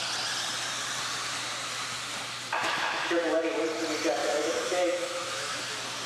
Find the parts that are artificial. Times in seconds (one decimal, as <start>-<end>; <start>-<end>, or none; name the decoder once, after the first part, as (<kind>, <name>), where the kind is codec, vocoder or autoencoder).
2.6-3.6 (autoencoder, DAC-VAE); 4.2-5.6

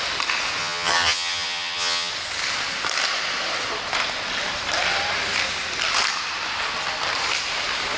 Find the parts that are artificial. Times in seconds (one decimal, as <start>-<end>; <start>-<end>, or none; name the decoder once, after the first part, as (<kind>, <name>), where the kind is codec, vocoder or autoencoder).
0.6-2.1 (vocoder, HiFi-GAN)

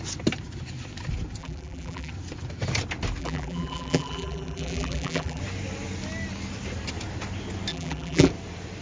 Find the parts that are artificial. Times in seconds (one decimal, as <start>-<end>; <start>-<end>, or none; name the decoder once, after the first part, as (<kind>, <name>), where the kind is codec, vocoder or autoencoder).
1.4-2.1 (vocoder, BigVGAN v2); 3.2-5.4; 7.7-8.3

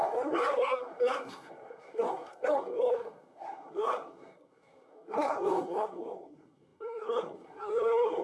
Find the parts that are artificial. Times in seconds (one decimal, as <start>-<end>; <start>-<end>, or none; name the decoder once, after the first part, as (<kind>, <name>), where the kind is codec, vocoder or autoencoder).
0.0-8.2 (codec, SNAC)

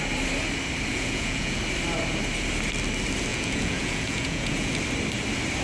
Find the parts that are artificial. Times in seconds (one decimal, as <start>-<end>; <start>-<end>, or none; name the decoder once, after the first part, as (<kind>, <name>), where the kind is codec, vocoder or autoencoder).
0.9-1.6 (vocoder, Vocos); 3.3-4.8